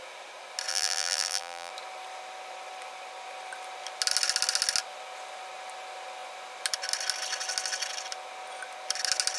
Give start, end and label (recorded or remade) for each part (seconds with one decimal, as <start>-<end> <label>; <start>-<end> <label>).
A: 0.0-0.7 recorded; 0.7-1.7 remade; 1.7-9.4 recorded